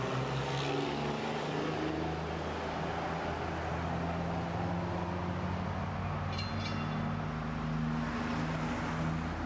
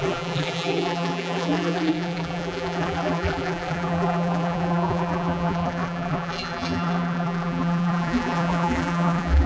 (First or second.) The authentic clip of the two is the first